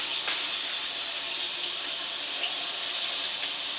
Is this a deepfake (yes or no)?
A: no